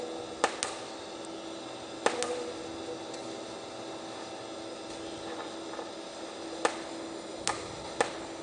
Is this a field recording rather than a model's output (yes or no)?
yes